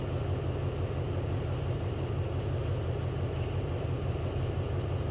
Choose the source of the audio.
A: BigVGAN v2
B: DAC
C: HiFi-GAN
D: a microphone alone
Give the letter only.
D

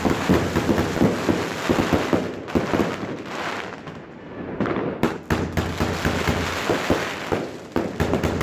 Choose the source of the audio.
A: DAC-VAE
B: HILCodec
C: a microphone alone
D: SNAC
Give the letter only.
C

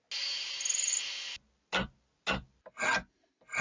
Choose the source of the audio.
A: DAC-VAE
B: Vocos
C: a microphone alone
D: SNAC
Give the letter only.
C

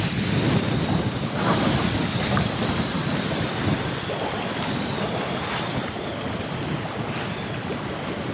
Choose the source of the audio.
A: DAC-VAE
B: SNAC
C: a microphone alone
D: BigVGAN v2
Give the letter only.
C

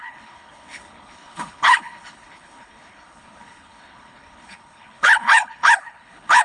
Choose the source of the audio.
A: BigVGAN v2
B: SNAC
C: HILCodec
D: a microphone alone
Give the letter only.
C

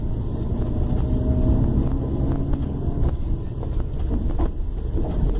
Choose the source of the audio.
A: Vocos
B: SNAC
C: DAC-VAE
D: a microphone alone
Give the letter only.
D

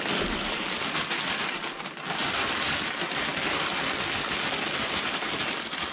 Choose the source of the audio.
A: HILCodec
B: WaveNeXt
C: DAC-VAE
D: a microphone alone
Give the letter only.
D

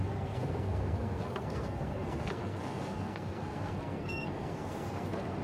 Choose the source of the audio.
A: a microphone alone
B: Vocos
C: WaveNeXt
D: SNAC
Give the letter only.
D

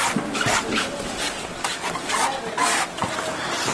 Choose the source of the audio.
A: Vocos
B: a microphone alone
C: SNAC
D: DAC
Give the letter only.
B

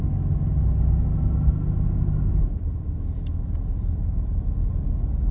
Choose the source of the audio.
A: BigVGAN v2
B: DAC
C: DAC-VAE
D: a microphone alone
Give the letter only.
D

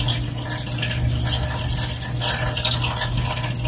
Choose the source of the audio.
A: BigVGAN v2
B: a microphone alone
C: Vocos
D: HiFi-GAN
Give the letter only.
B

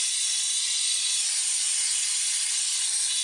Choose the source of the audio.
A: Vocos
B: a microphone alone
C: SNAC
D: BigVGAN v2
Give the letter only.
B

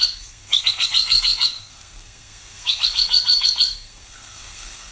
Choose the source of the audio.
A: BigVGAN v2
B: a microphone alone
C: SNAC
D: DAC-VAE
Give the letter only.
C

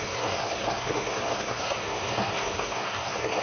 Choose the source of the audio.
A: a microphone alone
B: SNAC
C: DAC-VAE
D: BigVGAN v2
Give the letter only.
B